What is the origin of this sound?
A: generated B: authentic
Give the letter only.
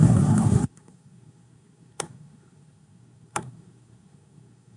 A